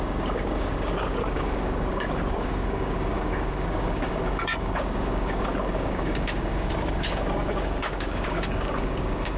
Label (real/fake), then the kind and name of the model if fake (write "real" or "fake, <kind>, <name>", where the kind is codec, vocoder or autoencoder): fake, codec, DAC